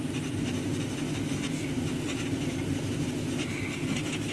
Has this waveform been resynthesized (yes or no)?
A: no